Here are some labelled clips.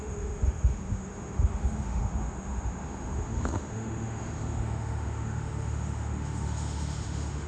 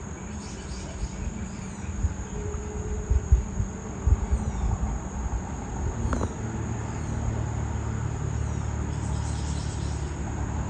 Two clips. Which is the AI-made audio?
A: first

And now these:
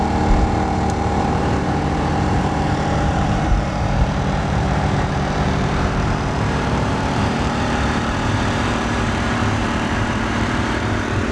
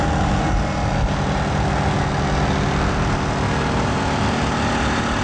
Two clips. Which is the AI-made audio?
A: first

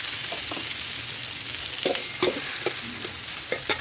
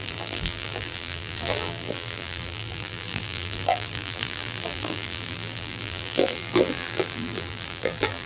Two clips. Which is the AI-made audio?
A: second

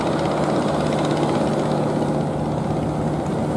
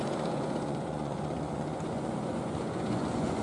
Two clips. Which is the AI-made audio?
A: second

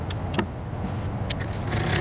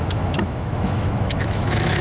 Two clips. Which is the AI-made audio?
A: second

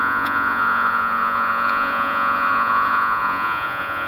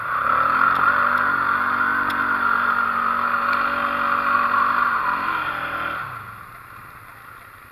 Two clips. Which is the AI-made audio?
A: first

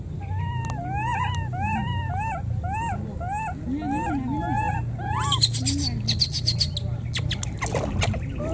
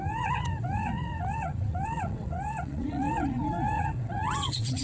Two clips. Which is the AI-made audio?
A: second